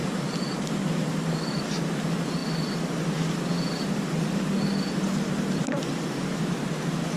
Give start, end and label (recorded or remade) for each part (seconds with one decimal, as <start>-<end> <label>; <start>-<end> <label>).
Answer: 0.0-1.5 remade; 1.5-7.2 recorded